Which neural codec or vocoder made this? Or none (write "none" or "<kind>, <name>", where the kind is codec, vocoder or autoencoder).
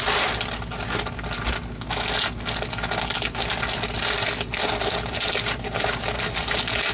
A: none